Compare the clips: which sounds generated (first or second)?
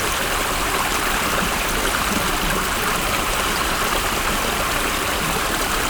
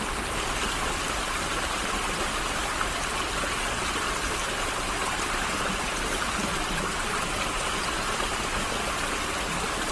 first